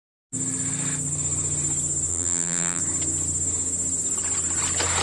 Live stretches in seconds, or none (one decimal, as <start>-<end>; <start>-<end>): 0.0-2.1; 2.8-5.0

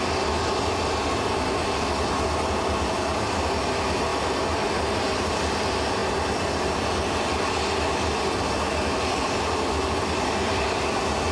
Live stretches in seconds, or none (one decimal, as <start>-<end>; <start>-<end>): 0.0-4.1; 5.3-6.0; 6.8-11.3

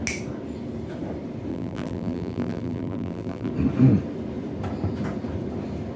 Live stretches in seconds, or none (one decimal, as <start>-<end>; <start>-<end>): 0.0-1.5; 3.5-6.0